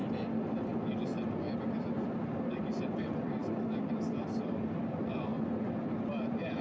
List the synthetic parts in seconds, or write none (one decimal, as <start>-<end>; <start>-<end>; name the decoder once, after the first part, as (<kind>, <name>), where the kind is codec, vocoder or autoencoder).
0.0-0.7 (vocoder, BigVGAN v2); 1.6-5.3; 5.8-6.6